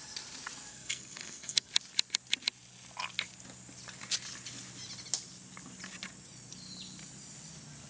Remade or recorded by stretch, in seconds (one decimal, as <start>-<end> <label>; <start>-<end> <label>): 0.0-0.7 recorded; 0.7-1.7 remade; 1.7-7.9 recorded